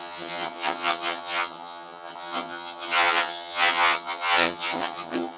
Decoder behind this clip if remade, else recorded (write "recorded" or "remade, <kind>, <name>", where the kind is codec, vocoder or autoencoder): remade, vocoder, HiFi-GAN